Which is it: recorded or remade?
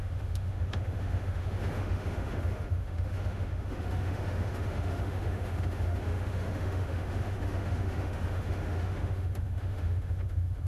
remade